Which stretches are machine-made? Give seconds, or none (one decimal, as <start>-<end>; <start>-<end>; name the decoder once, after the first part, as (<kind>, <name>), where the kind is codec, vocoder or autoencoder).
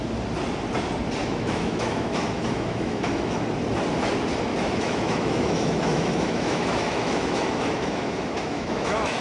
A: 1.2-3.4 (autoencoder, DAC-VAE); 4.5-9.2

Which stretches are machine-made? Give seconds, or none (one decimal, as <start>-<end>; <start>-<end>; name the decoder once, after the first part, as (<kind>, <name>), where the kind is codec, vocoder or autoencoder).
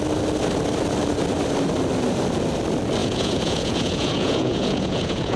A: 3.0-5.4 (vocoder, Vocos)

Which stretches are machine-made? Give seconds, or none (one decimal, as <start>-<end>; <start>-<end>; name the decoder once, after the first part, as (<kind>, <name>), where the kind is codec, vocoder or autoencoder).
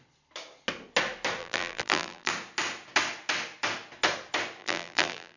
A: 1.4-2.3 (vocoder, BigVGAN v2); 4.6-5.4